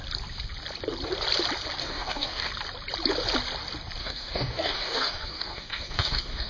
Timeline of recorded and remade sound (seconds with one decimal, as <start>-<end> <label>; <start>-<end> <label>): 0.0-1.8 recorded; 1.8-2.5 remade; 2.5-4.0 recorded; 4.0-6.5 remade